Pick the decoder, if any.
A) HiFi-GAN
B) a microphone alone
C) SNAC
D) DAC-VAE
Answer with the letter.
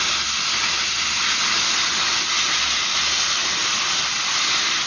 B